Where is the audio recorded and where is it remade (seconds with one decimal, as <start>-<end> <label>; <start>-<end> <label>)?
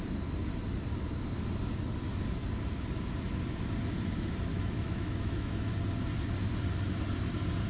0.0-4.5 recorded; 4.5-5.7 remade; 5.7-7.7 recorded